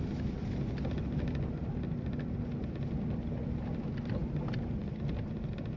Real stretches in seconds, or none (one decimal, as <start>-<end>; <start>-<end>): 0.0-5.8